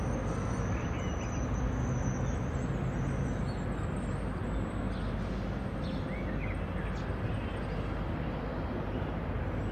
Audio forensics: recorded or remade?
recorded